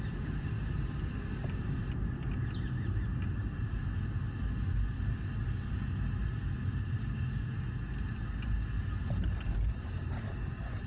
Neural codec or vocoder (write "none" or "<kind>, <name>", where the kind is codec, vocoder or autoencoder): none